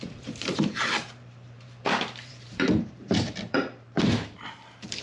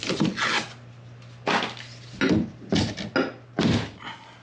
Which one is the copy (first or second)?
first